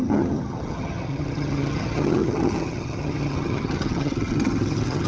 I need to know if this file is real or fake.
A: fake